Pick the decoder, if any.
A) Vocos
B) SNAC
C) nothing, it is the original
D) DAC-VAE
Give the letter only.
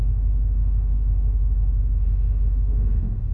D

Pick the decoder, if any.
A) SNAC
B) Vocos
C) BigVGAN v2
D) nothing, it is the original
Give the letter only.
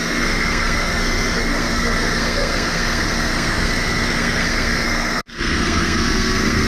A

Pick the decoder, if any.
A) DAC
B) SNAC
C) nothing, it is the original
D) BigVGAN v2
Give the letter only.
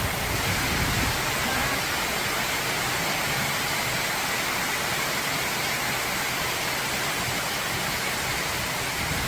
C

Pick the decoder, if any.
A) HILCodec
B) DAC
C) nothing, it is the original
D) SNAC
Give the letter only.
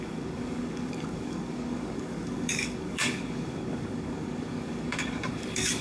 B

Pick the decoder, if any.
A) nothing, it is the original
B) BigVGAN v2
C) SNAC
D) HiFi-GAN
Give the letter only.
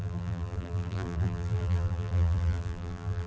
B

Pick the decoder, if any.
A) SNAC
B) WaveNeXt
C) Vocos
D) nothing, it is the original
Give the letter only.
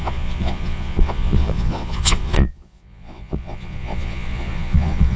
C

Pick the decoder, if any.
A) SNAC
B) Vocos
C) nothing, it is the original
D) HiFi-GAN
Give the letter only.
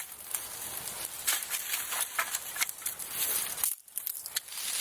C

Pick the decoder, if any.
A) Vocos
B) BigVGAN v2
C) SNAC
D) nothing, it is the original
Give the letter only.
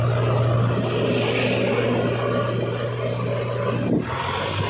D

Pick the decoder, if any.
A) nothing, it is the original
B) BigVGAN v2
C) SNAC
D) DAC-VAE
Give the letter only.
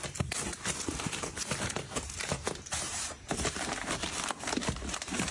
B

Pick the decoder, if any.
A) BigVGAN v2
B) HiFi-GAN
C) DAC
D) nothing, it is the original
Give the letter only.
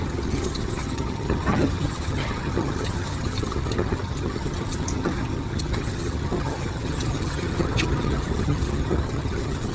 B